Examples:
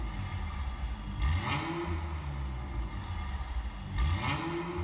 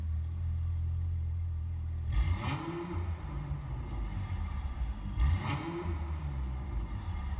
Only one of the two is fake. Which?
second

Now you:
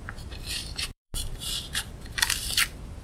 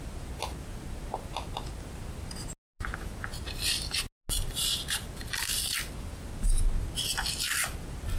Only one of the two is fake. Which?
first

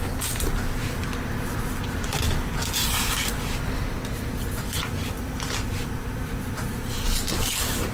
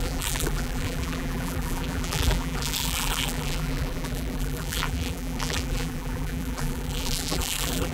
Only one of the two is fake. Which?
second